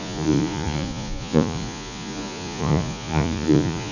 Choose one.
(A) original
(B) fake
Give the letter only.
B